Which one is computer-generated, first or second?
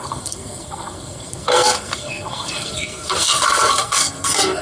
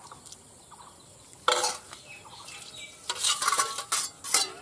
first